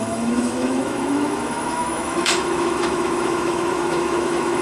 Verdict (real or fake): fake